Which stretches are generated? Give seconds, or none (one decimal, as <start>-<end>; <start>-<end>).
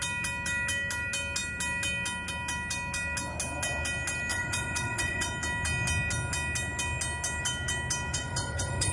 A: 4.3-5.3; 8.1-8.9